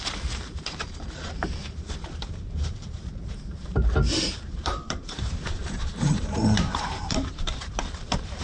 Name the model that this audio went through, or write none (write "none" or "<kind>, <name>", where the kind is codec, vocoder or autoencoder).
vocoder, BigVGAN v2